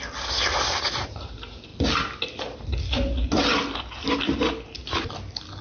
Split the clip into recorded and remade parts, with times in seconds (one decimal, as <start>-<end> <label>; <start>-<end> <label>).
0.0-5.6 recorded